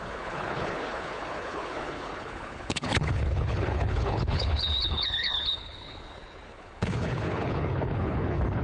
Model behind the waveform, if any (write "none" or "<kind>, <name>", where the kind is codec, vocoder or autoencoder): codec, HILCodec